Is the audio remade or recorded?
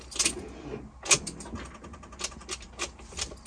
recorded